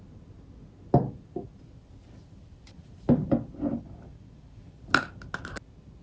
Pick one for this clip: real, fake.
real